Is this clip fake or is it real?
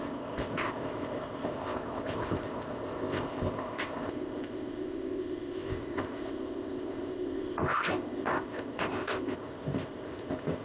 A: fake